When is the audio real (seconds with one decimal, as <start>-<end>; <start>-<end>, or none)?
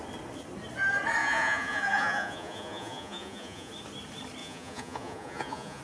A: 0.0-1.2; 3.7-4.4